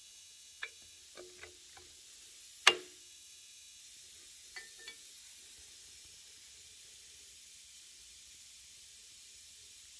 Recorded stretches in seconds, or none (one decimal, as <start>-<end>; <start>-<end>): 1.0-3.0; 3.8-10.0